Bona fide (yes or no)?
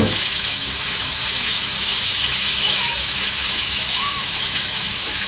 no